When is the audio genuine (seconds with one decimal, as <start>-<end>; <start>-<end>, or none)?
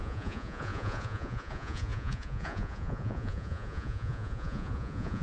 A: none